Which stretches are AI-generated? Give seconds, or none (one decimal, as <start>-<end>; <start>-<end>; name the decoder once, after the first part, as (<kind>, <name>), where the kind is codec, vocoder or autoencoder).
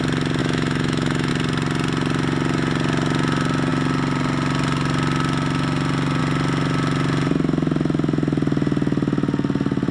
0.4-1.3 (autoencoder, DAC-VAE)